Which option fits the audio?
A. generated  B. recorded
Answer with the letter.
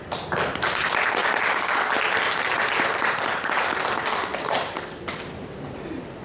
B